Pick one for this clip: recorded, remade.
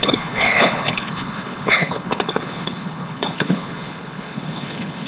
remade